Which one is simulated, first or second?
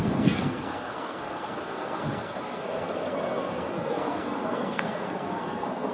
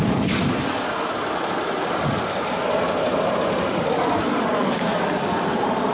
first